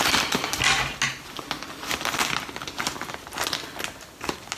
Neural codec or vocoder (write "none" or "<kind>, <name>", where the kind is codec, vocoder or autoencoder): none